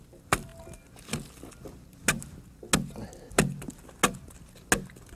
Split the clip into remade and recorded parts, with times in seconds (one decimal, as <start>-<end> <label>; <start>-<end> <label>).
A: 0.0-5.1 recorded